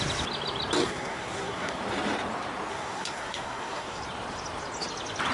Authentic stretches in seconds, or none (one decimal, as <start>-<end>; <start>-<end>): 0.0-0.8; 1.8-2.7; 4.0-5.3

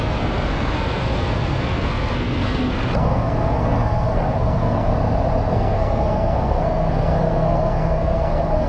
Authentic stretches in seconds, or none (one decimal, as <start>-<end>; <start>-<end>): 4.9-5.5

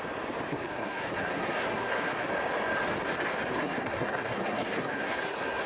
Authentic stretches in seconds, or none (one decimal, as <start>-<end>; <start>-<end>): 0.0-0.5; 2.3-3.5

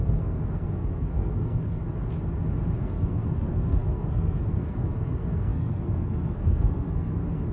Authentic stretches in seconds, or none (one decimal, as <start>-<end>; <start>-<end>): 1.8-2.8

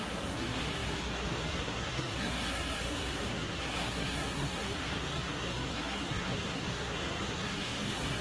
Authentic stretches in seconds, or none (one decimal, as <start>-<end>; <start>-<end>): none

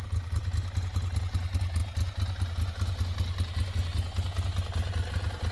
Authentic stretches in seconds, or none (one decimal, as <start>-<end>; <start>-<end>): 0.0-5.5

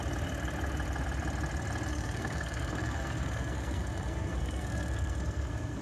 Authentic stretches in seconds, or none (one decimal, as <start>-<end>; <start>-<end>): 0.0-1.9

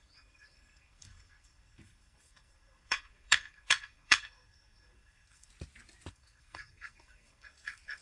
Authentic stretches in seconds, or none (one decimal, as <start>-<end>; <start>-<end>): 5.5-6.1